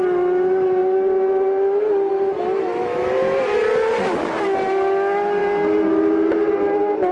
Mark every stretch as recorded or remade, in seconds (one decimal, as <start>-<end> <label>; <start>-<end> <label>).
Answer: 0.0-7.1 recorded